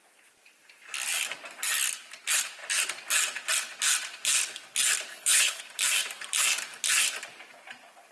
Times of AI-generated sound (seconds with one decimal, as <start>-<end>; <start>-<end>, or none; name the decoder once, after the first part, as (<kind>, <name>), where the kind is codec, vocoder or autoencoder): 5.1-5.6 (codec, HILCodec)